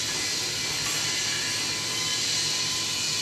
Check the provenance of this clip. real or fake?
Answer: real